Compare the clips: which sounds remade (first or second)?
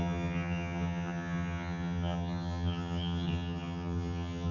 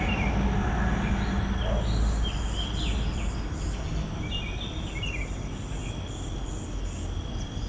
first